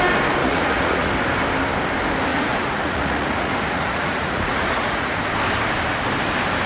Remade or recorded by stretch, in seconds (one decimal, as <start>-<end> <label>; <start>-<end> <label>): 0.0-0.4 recorded; 0.4-1.1 remade; 1.1-2.3 recorded; 2.3-5.1 remade; 5.1-6.7 recorded